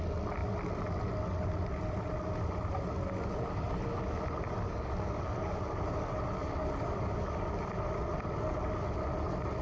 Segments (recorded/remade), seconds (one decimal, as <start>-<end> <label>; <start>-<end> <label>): 0.0-9.6 recorded